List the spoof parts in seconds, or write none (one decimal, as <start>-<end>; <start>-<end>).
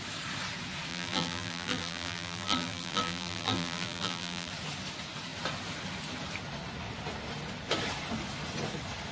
0.9-4.5